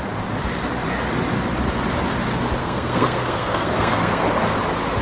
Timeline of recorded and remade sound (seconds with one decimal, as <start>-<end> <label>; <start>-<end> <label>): 0.0-2.6 recorded; 2.6-4.2 remade; 4.2-5.0 recorded